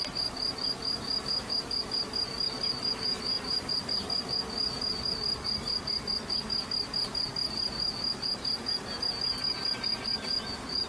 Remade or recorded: recorded